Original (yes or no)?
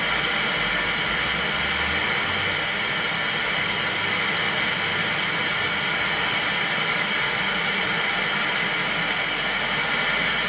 yes